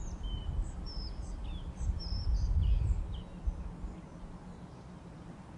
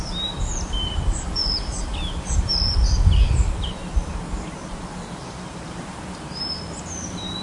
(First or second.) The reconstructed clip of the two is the second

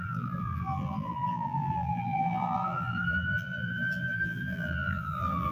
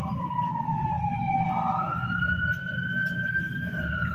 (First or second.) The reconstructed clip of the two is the first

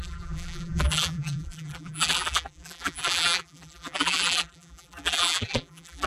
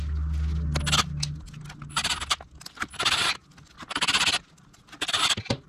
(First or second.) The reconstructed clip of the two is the first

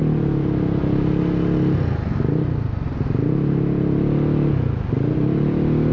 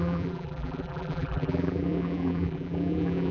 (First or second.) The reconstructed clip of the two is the second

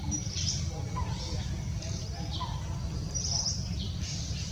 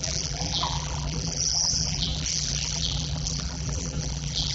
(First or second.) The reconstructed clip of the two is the second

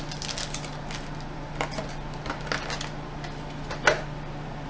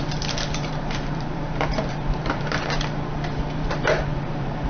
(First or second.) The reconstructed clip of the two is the second